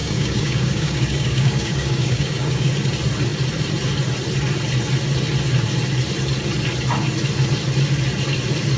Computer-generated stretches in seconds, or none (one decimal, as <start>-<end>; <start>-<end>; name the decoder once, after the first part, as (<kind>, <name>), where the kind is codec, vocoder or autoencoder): 0.0-2.7 (codec, DAC)